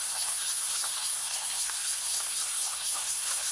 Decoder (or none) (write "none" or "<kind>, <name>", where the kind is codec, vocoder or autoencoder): codec, SNAC